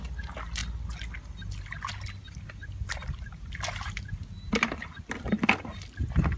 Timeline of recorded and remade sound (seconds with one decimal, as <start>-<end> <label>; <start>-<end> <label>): 0.0-6.4 recorded